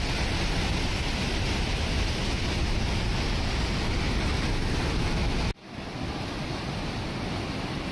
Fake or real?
real